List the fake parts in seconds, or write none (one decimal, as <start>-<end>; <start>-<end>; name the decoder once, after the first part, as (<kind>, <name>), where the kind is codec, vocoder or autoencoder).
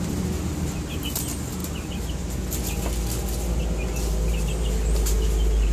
none